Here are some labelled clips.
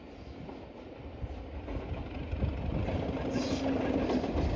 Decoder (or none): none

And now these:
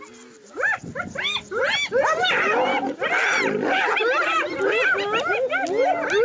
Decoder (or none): none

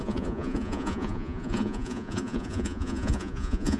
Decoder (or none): vocoder, Vocos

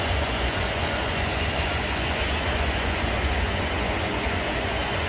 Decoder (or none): vocoder, Vocos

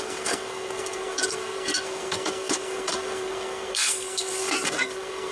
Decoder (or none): codec, SNAC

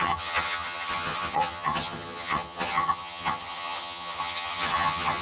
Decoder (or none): vocoder, HiFi-GAN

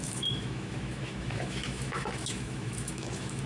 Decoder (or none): autoencoder, DAC-VAE